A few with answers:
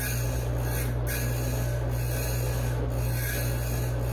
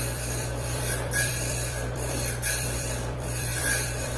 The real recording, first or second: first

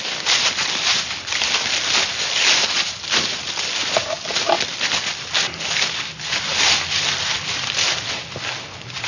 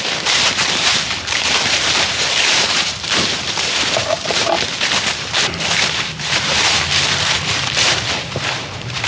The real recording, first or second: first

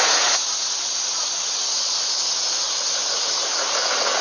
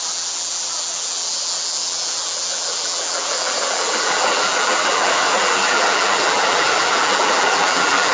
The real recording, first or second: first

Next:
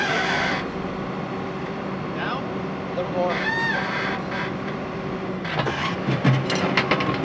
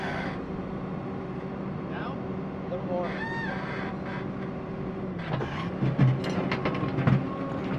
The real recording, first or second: second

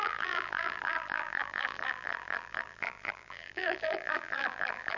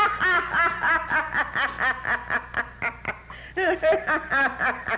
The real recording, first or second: second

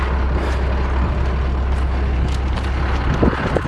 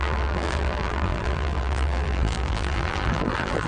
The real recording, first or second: first